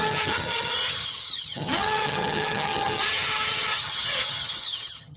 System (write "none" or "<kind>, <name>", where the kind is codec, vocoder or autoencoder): vocoder, HiFi-GAN